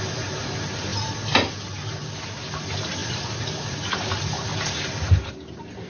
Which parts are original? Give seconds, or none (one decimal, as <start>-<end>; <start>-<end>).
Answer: 0.0-3.0; 5.3-5.9